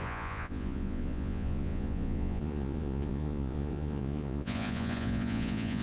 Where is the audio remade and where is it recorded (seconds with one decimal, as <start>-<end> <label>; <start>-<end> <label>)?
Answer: 0.0-5.8 remade